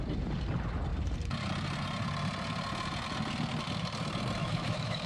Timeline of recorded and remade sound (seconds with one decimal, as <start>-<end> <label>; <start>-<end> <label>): 0.0-4.4 recorded; 4.4-5.1 remade